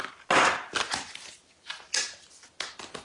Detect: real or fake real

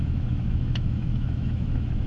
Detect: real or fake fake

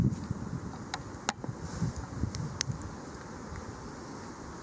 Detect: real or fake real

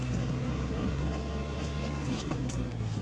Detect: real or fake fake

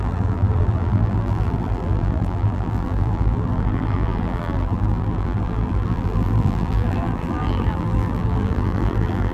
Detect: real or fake fake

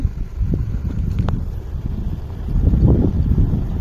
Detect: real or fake fake